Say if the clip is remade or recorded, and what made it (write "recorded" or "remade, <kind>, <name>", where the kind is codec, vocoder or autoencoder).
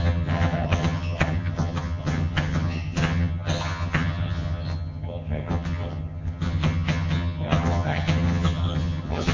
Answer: remade, vocoder, HiFi-GAN